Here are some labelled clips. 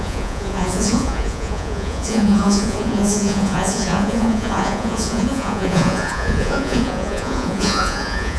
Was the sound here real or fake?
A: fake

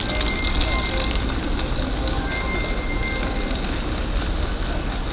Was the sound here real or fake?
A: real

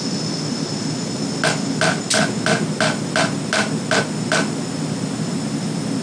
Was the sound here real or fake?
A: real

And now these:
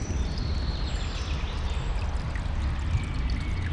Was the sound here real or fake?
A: real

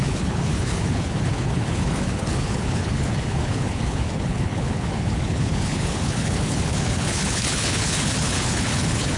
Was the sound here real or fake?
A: fake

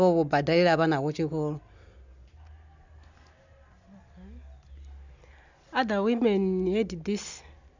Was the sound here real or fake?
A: real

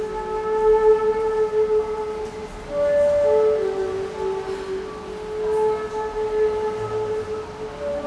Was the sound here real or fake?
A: real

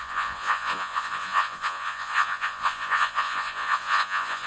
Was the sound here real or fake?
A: fake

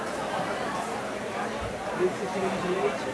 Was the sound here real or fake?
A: fake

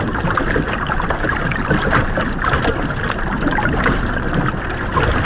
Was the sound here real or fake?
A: real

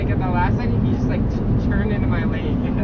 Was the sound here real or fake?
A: real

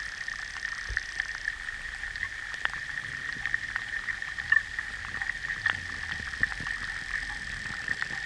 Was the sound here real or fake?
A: real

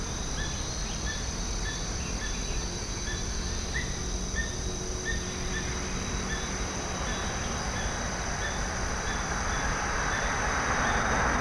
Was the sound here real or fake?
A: real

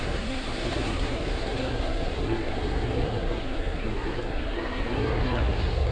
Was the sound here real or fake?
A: fake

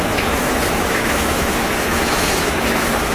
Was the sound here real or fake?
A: fake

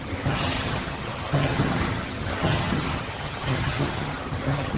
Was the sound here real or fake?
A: fake